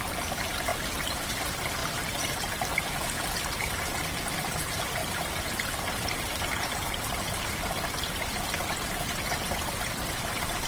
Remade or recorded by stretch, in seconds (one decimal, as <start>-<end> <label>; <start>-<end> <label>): 0.0-5.0 remade; 5.0-10.1 recorded; 10.1-10.7 remade